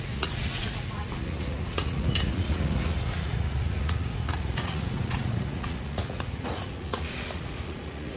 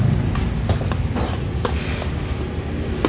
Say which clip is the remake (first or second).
first